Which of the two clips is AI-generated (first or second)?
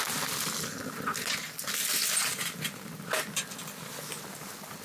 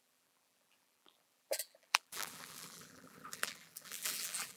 second